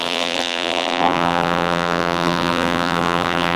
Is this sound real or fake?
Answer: fake